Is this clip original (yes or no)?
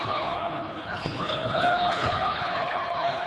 no